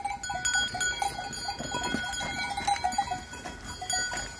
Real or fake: real